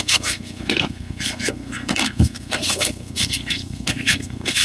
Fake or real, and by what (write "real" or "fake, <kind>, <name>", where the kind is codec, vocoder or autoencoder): fake, codec, SNAC